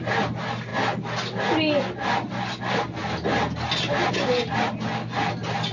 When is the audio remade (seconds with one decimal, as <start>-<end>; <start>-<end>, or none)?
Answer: none